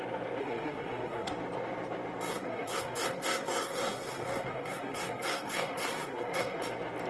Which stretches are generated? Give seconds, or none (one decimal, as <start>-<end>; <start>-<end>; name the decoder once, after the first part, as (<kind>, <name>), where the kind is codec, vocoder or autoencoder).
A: 0.4-1.3 (codec, SNAC); 2.3-6.6